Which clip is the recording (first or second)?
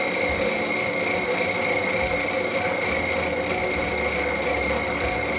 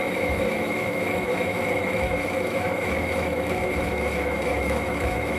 first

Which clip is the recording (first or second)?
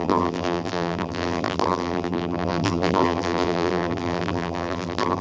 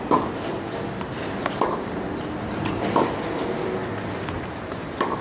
second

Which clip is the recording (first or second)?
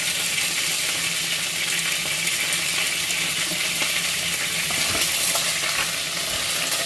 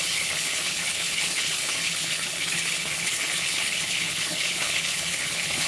first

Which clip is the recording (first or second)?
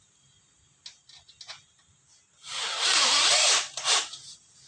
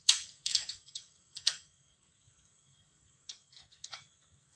first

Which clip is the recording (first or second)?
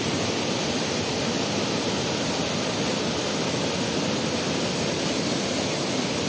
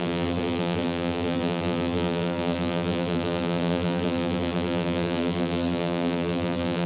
first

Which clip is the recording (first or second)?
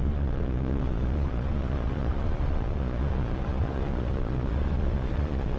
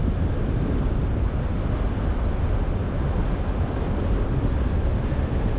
second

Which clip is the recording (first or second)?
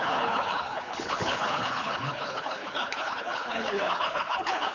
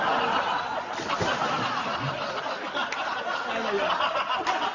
second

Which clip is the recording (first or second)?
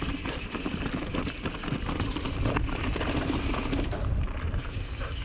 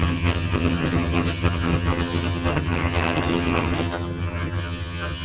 first